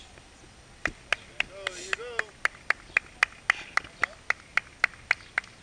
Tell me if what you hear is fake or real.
real